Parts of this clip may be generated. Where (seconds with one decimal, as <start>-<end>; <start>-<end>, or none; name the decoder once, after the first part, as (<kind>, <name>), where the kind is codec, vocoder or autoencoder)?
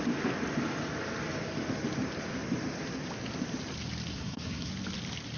4.1-4.7 (codec, SNAC)